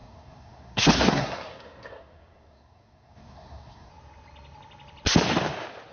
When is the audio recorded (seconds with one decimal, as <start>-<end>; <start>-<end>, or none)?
3.9-5.9